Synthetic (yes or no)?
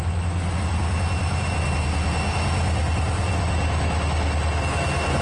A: no